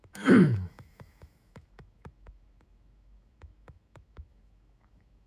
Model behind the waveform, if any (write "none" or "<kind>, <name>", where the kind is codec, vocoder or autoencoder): autoencoder, DAC-VAE